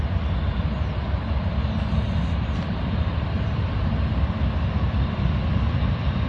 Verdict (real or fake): real